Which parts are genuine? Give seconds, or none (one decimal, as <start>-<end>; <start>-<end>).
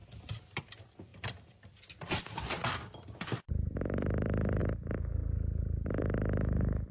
0.6-1.1; 4.6-5.2; 5.9-6.9